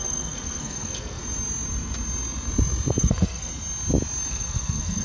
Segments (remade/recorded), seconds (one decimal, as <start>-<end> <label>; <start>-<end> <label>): 0.0-1.2 remade; 1.2-3.0 recorded; 3.0-3.5 remade; 3.5-4.3 recorded; 4.3-5.0 remade